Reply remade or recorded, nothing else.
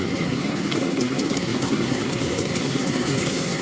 remade